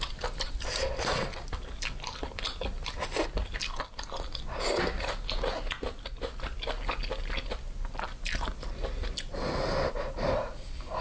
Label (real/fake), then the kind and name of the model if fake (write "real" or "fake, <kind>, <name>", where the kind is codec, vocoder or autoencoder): real